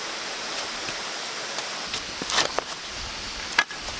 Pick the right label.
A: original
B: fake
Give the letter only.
A